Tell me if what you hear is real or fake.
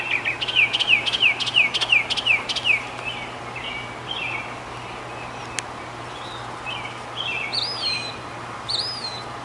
real